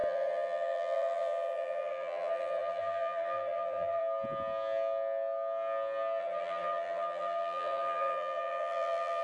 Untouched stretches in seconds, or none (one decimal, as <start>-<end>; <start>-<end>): 4.0-6.2